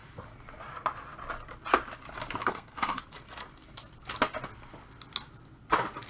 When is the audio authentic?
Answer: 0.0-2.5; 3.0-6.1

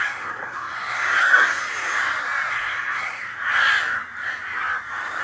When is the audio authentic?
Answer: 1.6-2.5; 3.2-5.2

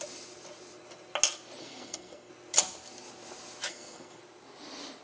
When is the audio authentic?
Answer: 0.0-1.6; 2.3-3.7; 4.2-5.0